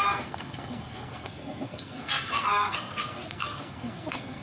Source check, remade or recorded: remade